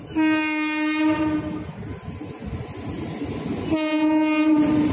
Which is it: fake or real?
real